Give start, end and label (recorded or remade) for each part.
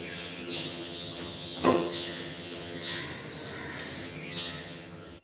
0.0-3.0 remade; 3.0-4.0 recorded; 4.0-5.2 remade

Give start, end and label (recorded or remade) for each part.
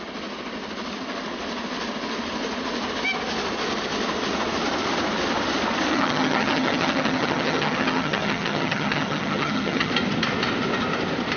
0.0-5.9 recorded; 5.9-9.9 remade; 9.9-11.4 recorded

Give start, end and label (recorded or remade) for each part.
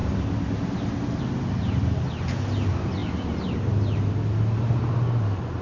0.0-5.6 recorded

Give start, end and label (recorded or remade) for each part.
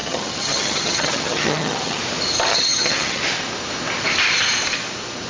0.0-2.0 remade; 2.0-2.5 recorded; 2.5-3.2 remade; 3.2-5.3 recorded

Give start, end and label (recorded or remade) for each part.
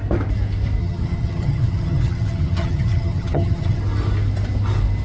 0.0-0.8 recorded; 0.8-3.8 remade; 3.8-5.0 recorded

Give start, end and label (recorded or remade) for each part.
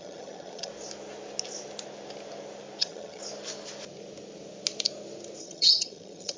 0.0-0.7 remade; 0.7-2.8 recorded; 2.8-3.2 remade; 3.2-5.4 recorded; 5.4-6.4 remade